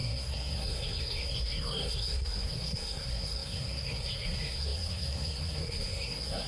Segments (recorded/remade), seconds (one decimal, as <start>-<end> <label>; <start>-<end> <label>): 0.0-6.5 remade